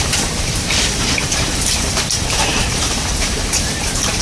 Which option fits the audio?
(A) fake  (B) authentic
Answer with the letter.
A